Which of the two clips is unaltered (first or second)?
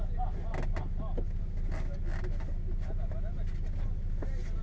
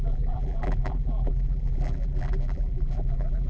first